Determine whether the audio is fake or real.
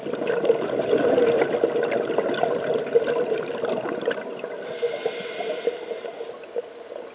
real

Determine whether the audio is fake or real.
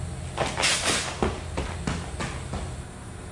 real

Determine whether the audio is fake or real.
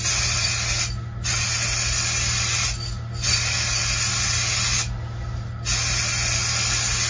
real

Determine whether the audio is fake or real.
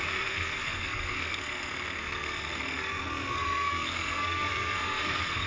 fake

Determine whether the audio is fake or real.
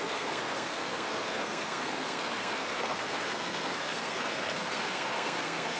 fake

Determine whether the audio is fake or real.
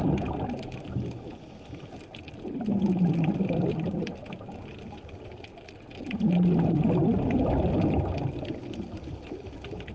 real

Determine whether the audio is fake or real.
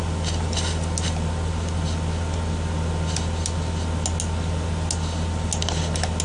real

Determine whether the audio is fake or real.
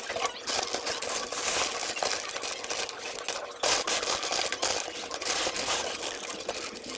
real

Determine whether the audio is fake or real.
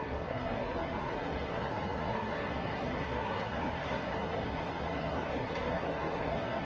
fake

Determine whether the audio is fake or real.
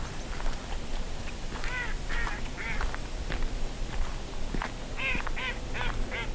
real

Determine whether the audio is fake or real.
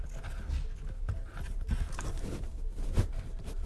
real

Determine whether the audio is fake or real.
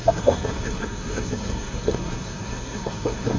fake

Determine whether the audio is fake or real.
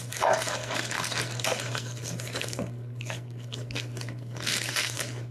fake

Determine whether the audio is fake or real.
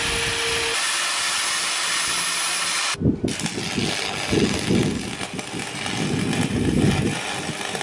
real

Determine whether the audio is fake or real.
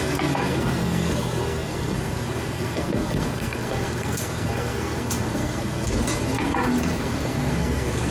fake